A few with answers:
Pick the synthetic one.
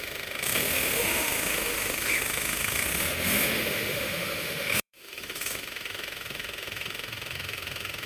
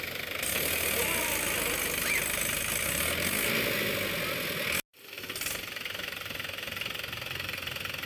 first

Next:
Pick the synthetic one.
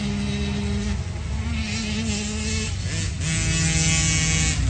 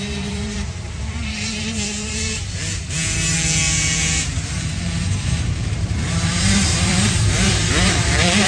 second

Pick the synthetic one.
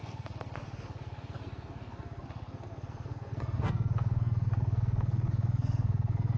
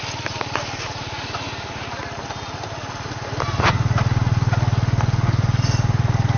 first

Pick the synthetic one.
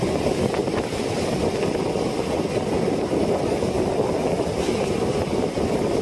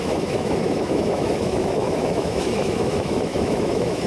second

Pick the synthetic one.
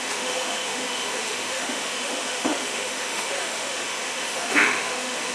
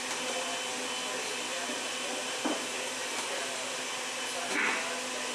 first